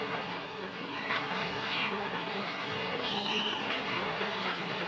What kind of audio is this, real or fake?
fake